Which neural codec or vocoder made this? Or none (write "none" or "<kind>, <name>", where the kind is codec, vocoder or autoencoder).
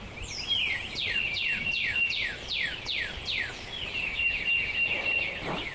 none